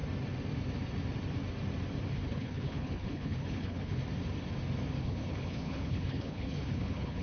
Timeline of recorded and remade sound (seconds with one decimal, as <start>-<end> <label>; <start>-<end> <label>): 0.0-2.1 recorded; 2.1-4.0 remade; 4.0-5.0 recorded; 5.0-7.2 remade